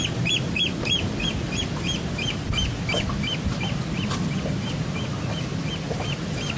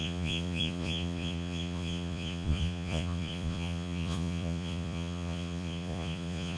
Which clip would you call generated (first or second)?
second